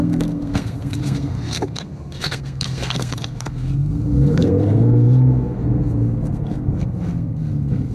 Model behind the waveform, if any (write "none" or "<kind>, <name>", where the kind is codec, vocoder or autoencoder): codec, SNAC